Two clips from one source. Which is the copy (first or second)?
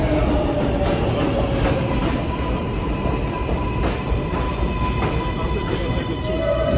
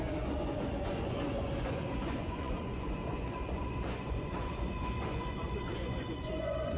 second